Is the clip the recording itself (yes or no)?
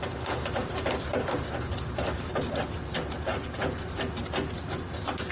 yes